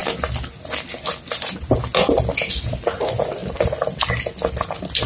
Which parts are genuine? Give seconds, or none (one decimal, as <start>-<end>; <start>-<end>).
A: 0.0-5.1